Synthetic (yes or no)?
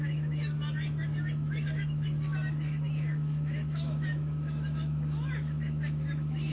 yes